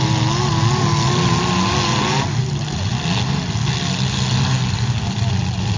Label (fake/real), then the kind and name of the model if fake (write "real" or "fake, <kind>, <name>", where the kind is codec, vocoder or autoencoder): real